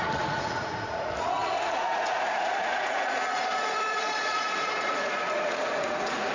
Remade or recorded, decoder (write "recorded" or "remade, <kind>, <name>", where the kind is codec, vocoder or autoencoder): remade, vocoder, Vocos